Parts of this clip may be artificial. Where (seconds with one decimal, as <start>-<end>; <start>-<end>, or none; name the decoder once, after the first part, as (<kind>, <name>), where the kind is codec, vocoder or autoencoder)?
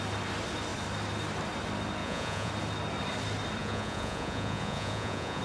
2.0-2.5 (vocoder, Vocos); 3.6-5.4